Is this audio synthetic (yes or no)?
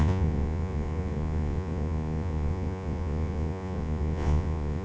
yes